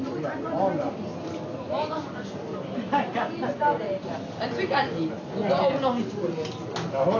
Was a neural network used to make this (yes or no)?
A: no